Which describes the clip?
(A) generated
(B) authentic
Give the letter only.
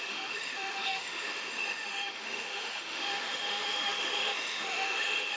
A